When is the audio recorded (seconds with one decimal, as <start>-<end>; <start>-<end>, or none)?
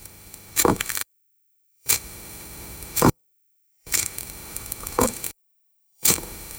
none